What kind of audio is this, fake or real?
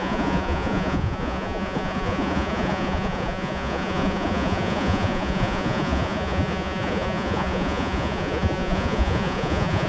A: fake